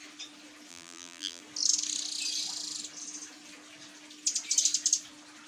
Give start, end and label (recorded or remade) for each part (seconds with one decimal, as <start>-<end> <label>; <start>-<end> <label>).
0.0-0.7 recorded; 0.7-1.4 remade; 1.4-5.5 recorded

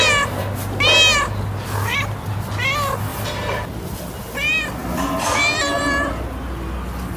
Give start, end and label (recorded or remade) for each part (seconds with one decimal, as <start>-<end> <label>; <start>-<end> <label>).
0.0-4.8 recorded; 4.8-5.8 remade; 5.8-7.2 recorded

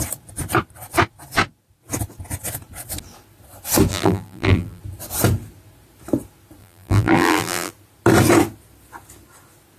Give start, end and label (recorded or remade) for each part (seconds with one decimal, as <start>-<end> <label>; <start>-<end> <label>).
0.0-3.9 recorded; 3.9-4.8 remade; 4.8-6.6 recorded; 6.6-7.7 remade; 7.7-9.8 recorded

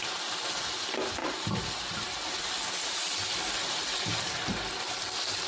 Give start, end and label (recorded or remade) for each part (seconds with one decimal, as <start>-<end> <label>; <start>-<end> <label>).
0.0-1.2 recorded; 1.2-2.3 remade; 2.3-5.5 recorded

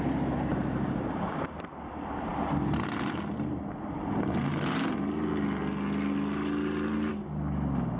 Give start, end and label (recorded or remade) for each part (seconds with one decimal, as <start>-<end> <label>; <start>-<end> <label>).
0.0-0.5 recorded; 0.5-1.0 remade; 1.0-8.0 recorded

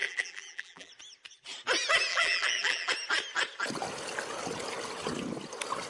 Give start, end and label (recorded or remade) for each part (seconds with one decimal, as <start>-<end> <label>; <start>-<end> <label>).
0.0-0.9 remade; 0.9-2.1 recorded; 2.1-2.9 remade; 2.9-5.9 recorded